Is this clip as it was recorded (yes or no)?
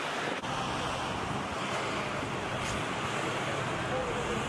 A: yes